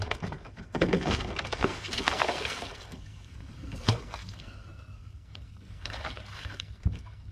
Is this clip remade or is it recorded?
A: remade